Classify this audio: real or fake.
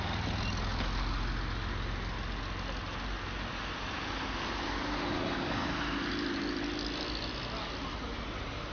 real